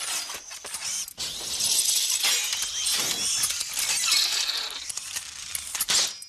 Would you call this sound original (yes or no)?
yes